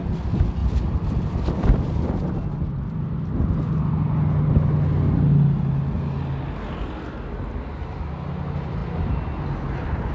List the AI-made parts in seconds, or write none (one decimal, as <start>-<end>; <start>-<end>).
none